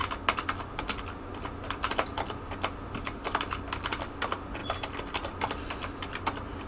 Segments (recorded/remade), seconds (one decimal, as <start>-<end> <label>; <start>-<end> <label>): 0.0-6.7 recorded